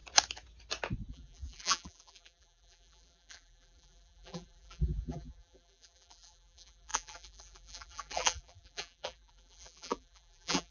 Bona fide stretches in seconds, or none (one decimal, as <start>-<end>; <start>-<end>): 0.0-1.1